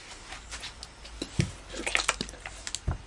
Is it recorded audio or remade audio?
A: recorded